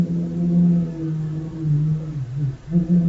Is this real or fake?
real